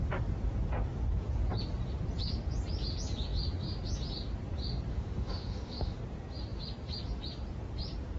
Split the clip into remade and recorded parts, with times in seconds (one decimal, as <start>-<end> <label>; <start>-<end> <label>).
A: 0.0-4.9 recorded; 4.9-6.0 remade; 6.0-8.2 recorded